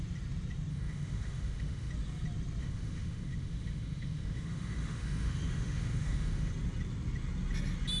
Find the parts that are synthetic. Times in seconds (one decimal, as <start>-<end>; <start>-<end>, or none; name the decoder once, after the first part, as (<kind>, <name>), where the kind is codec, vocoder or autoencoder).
0.7-1.9 (autoencoder, DAC-VAE); 2.6-6.5